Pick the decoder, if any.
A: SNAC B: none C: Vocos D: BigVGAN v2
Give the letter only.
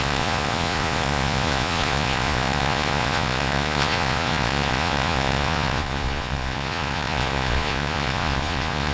C